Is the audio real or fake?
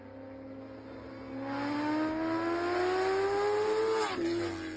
real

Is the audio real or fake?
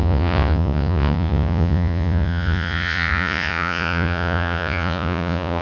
fake